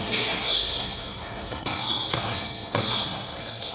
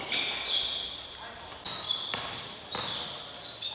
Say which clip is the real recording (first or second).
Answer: second